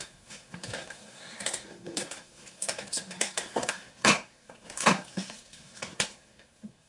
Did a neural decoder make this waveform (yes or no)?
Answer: yes